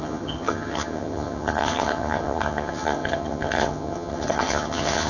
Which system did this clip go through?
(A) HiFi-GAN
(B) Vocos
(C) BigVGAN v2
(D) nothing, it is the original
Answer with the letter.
A